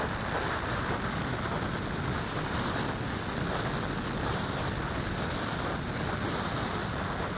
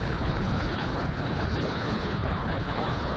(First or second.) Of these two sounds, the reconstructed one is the second